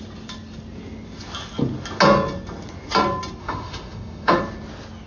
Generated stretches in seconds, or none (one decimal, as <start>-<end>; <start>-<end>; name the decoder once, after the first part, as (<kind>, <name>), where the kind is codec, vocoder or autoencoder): 3.4-4.4 (autoencoder, DAC-VAE)